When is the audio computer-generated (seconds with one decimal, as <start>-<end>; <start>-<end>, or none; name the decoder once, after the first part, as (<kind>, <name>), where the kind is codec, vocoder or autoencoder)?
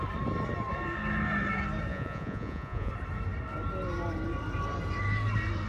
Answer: 1.9-2.9 (vocoder, Vocos)